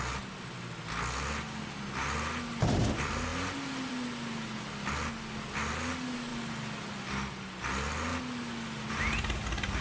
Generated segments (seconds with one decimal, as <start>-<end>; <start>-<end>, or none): none